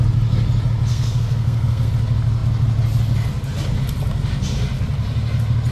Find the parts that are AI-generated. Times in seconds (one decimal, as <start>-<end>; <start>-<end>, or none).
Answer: 0.9-1.9